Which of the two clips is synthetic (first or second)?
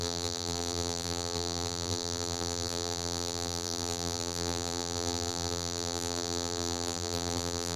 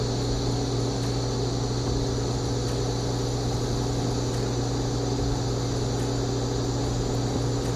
first